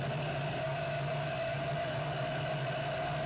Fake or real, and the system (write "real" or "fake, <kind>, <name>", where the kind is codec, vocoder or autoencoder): real